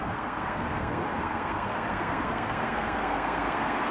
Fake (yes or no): yes